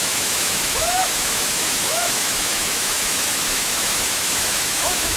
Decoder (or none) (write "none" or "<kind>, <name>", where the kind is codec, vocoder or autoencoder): autoencoder, DAC-VAE